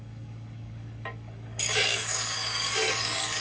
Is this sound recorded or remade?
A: remade